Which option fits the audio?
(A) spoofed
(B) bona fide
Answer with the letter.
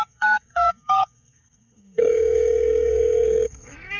A